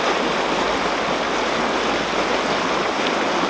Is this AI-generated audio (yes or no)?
no